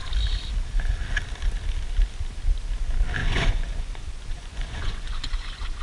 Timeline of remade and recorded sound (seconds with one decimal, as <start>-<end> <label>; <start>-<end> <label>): 0.0-3.2 recorded; 3.2-5.8 remade